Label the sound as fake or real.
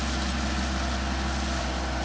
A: real